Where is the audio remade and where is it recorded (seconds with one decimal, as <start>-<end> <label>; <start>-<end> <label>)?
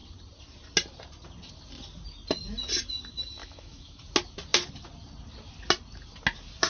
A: 0.0-3.4 recorded; 3.4-4.0 remade; 4.0-6.7 recorded